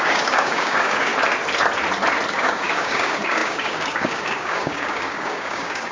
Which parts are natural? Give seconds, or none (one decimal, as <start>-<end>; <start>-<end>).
1.1-2.3